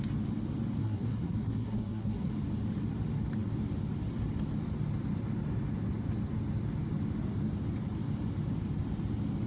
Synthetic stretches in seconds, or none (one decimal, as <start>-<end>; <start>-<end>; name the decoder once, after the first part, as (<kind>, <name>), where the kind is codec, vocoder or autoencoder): 0.8-2.3 (codec, SNAC)